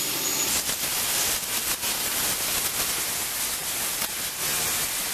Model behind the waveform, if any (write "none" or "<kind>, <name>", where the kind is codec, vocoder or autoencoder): none